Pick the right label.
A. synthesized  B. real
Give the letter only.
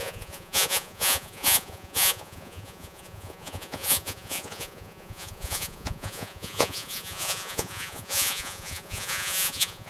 A